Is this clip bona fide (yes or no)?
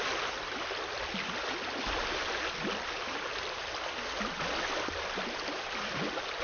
yes